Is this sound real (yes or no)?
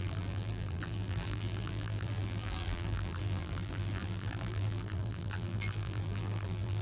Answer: no